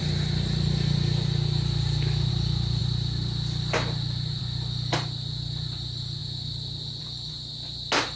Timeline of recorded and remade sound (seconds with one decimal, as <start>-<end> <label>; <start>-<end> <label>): 0.0-8.2 recorded